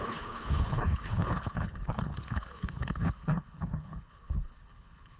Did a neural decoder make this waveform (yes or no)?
yes